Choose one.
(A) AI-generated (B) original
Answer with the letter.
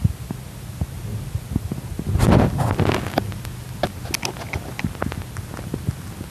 B